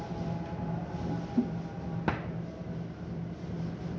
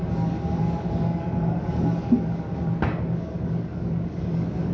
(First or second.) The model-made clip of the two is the second